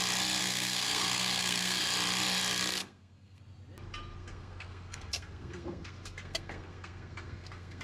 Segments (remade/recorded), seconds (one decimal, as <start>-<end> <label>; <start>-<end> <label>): 0.0-0.4 recorded; 0.4-1.8 remade; 1.8-2.8 recorded; 2.8-3.4 remade; 3.4-4.2 recorded; 4.2-7.8 remade